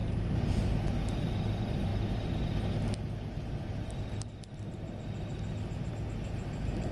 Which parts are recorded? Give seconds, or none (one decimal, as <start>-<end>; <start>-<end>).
0.5-6.9

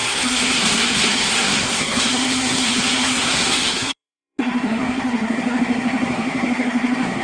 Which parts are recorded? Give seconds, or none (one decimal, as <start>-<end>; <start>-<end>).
none

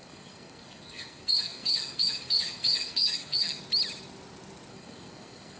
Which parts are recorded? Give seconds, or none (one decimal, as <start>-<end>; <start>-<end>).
3.6-4.7

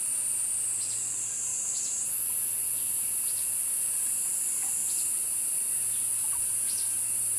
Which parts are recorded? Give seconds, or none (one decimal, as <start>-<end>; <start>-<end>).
0.0-7.4

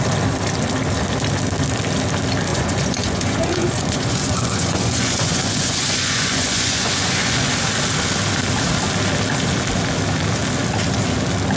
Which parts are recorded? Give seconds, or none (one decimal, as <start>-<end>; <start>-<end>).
0.0-2.5; 7.5-11.6

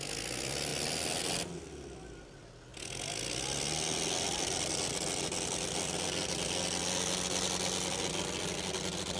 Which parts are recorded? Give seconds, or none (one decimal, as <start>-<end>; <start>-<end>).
0.0-9.2